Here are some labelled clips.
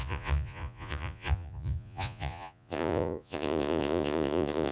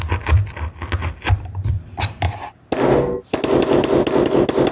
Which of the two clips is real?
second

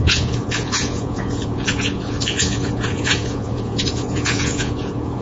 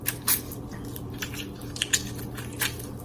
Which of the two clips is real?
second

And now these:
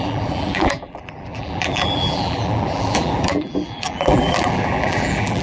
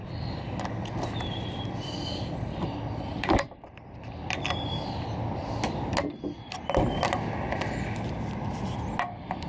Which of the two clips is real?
second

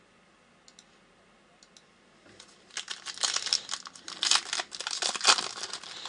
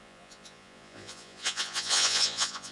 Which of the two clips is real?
first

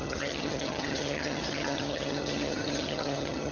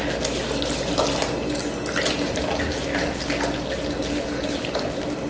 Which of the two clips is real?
second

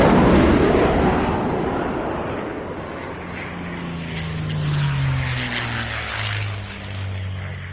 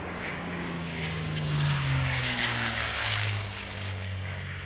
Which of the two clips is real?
first